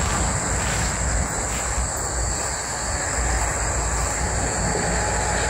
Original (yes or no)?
yes